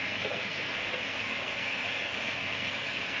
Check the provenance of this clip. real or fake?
fake